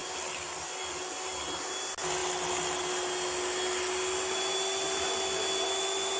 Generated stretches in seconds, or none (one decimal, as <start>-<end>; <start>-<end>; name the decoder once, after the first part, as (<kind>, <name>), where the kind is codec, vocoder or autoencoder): none